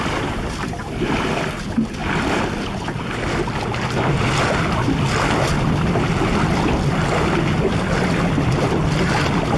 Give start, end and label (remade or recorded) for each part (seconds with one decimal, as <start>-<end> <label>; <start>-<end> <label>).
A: 0.0-9.6 recorded